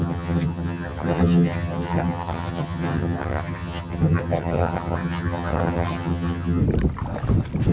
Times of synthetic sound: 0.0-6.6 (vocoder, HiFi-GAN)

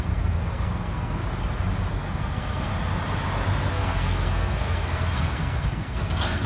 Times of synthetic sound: 0.0-1.2 (codec, SNAC); 1.9-2.7; 3.7-6.5